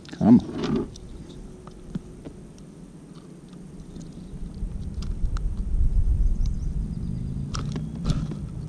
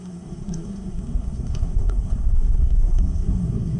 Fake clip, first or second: second